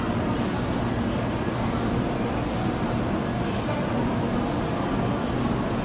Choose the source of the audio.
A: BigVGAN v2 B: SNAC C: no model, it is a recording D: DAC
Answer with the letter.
C